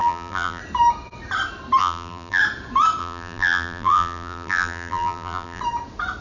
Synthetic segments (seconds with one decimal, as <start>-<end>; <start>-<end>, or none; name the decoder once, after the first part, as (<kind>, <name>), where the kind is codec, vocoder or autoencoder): 0.0-0.6 (vocoder, BigVGAN v2); 1.8-2.4; 3.0-5.6